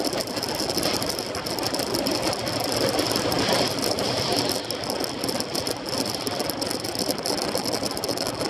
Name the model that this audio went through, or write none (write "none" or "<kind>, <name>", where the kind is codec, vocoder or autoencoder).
none